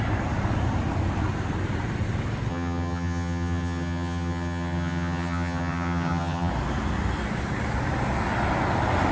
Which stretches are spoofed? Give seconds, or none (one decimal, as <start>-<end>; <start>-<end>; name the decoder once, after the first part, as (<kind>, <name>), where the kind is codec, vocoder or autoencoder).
2.5-6.5 (vocoder, HiFi-GAN)